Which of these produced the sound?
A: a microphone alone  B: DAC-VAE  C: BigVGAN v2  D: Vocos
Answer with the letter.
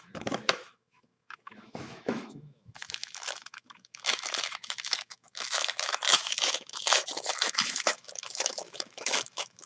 B